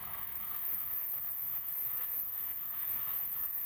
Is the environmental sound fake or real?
fake